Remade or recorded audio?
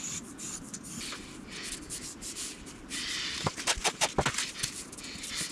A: recorded